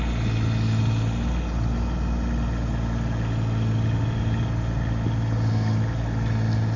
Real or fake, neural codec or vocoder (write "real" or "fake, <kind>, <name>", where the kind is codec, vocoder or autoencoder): real